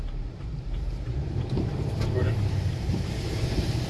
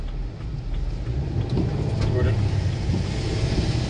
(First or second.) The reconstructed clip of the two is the first